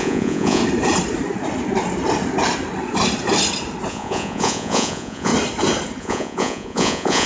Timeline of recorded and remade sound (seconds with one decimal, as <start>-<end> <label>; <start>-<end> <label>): 0.0-0.6 remade; 0.6-3.9 recorded; 3.9-5.3 remade; 5.3-6.0 recorded; 6.0-7.3 remade